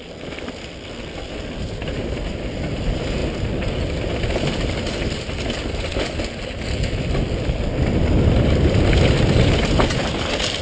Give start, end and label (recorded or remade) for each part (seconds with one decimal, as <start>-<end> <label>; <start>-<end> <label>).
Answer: 0.0-10.6 recorded